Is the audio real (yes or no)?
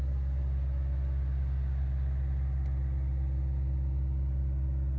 yes